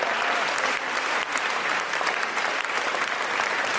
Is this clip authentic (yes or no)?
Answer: yes